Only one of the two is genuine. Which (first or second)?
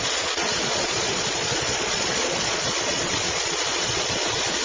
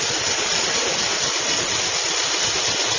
second